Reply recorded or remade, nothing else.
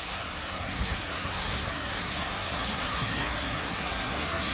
remade